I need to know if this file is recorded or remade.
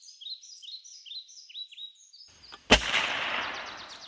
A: recorded